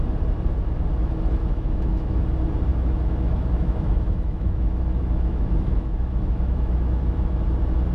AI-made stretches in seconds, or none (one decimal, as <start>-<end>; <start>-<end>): 1.4-2.2; 2.7-7.4